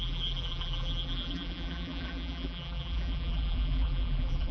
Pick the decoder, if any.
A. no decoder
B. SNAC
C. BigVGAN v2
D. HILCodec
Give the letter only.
C